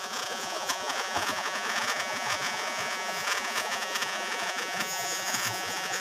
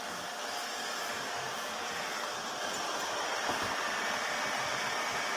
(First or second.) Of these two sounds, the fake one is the first